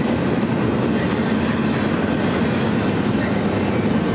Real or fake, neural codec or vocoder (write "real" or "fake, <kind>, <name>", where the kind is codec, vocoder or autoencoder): real